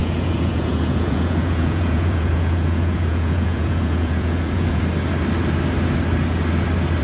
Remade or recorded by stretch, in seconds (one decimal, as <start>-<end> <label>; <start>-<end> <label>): 0.0-4.8 remade; 4.8-7.0 recorded